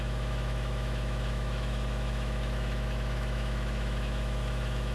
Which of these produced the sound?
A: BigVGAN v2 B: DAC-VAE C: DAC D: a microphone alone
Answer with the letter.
B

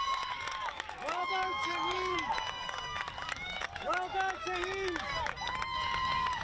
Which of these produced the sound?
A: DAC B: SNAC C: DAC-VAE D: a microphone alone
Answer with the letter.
A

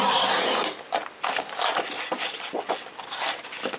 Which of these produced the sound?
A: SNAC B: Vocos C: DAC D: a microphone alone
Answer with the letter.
D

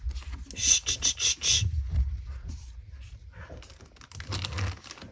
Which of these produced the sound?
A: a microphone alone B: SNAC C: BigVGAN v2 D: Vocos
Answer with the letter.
A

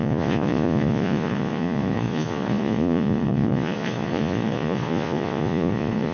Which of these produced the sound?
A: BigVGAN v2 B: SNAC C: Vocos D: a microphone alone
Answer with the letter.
C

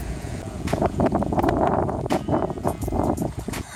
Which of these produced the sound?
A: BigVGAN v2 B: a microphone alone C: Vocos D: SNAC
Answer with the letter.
C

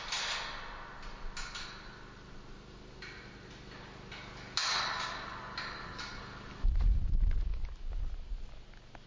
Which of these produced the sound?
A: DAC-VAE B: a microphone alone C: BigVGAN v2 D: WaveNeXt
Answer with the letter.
B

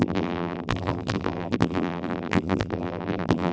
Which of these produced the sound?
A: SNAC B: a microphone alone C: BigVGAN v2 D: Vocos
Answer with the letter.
C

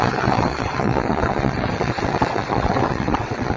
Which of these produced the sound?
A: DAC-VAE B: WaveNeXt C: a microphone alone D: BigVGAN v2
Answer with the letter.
B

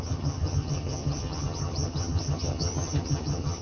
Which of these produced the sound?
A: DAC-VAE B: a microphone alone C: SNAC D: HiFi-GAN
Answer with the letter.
D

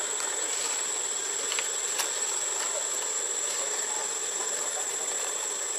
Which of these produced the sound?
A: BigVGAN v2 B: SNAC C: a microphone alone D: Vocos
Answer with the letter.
C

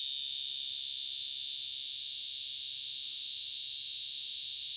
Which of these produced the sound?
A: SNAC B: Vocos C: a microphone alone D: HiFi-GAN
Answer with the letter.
C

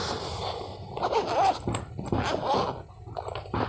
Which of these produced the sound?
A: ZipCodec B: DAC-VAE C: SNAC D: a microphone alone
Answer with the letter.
D